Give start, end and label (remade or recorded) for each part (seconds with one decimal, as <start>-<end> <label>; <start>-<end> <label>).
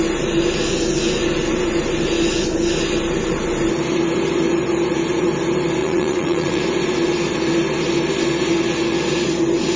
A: 0.0-5.8 recorded; 5.8-6.6 remade; 6.6-9.8 recorded